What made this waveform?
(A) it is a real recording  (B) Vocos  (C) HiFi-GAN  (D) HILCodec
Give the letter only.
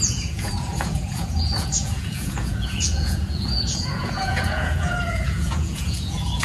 B